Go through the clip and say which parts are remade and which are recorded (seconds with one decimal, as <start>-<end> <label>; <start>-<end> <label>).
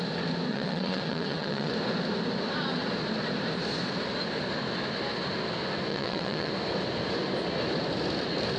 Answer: 0.0-0.5 recorded; 0.5-1.7 remade; 1.7-5.9 recorded; 5.9-6.5 remade; 6.5-8.6 recorded